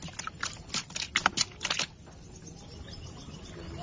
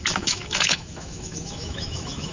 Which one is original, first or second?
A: first